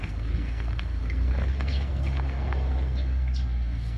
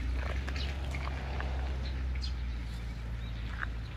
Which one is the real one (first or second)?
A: second